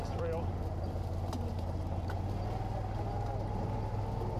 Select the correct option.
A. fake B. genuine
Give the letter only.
B